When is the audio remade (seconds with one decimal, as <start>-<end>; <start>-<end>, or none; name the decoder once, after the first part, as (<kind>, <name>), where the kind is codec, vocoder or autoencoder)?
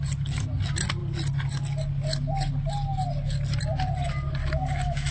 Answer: 4.4-5.1 (autoencoder, DAC-VAE)